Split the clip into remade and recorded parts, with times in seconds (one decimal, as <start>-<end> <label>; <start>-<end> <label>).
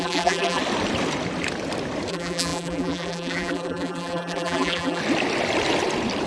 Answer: 0.0-0.6 remade; 0.6-2.1 recorded; 2.1-5.0 remade; 5.0-6.3 recorded